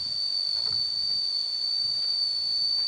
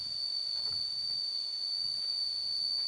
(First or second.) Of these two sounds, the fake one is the second